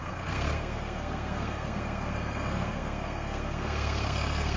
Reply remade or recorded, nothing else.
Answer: remade